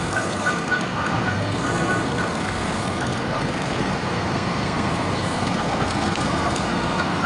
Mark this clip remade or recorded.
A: remade